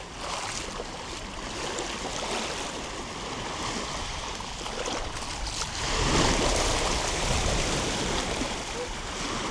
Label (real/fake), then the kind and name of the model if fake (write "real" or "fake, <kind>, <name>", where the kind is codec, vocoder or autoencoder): real